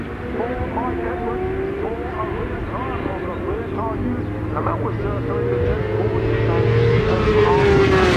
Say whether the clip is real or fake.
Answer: real